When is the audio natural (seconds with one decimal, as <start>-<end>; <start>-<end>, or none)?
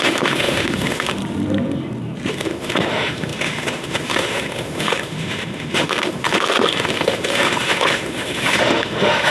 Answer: 1.2-2.3